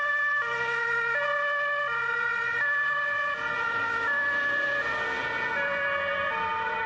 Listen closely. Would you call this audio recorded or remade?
recorded